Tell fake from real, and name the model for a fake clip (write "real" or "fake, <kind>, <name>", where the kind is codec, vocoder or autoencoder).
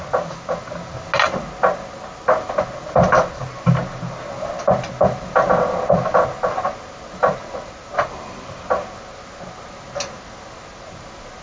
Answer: real